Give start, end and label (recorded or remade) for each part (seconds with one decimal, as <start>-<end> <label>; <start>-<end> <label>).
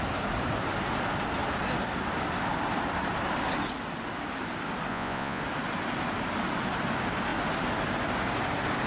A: 0.0-4.9 recorded; 4.9-5.4 remade; 5.4-8.9 recorded